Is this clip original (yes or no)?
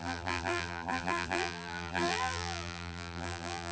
no